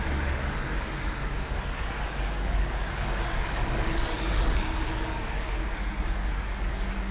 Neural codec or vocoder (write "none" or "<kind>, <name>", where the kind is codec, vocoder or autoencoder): codec, DAC